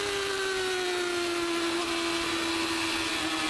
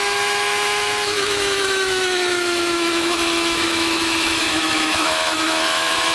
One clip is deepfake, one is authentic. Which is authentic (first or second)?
first